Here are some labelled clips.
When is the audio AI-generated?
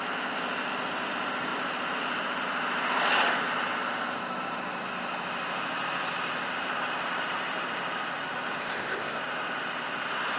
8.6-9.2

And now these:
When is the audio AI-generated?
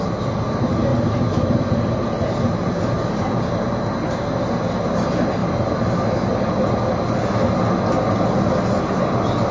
none